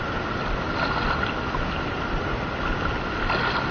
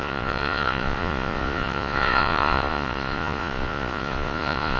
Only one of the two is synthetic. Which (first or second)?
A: second